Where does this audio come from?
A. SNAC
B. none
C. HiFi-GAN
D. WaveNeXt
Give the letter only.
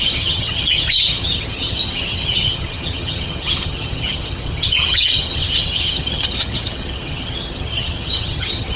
C